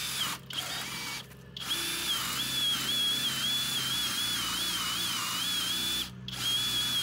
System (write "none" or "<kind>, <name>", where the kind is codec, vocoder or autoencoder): none